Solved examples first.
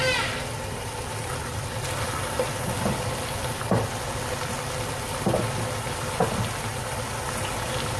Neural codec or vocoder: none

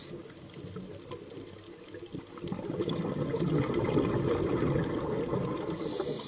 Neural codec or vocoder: none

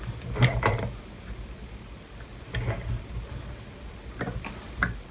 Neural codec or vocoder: none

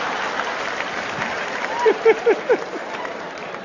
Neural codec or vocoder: vocoder, BigVGAN v2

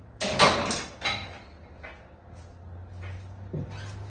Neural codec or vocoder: none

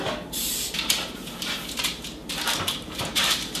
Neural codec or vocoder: vocoder, BigVGAN v2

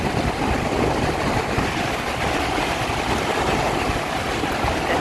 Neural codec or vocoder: none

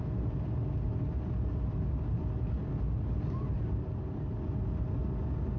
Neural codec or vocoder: none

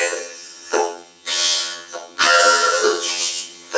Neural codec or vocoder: vocoder, HiFi-GAN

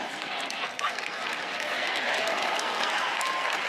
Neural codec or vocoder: codec, SNAC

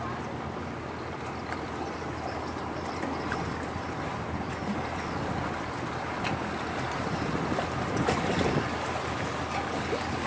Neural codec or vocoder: none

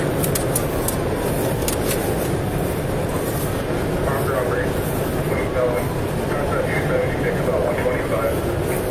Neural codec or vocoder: none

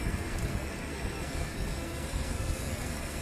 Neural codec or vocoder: codec, SNAC